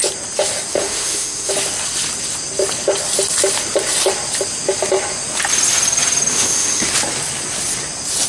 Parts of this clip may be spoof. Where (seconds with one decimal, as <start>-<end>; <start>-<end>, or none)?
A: 0.7-1.5; 6.3-6.9